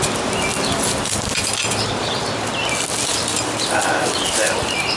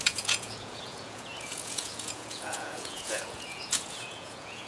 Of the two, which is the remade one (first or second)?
second